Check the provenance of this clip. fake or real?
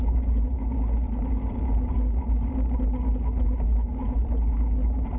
real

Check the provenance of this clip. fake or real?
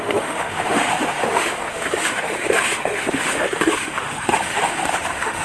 fake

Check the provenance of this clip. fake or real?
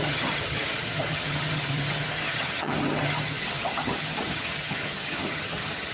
fake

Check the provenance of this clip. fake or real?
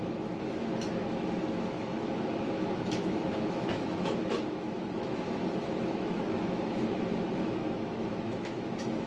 fake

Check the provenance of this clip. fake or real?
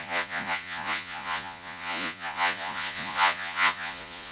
fake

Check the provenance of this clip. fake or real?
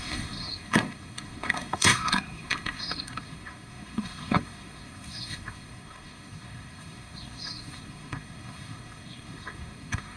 fake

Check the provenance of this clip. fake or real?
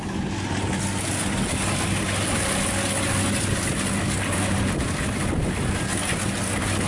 real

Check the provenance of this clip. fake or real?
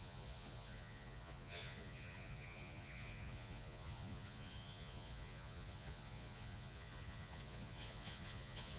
fake